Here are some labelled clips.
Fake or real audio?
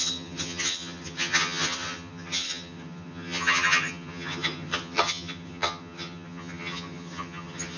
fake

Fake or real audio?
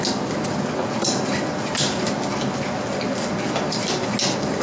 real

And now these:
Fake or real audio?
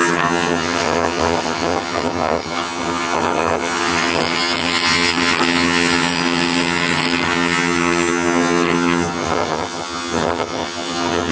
fake